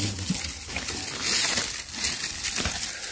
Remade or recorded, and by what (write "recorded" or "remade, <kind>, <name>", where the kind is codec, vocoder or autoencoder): recorded